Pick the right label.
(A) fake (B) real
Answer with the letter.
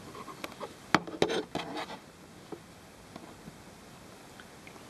B